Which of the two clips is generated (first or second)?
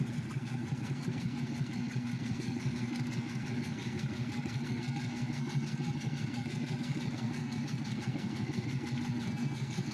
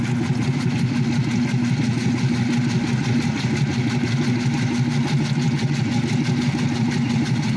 first